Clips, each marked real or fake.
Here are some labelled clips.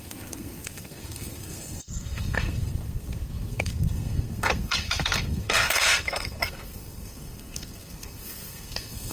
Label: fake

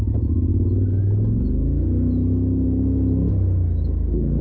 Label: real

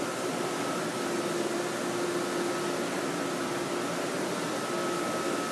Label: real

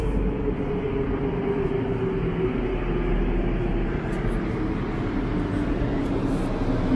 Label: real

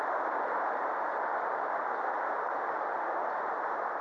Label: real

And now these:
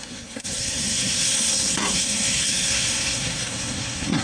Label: fake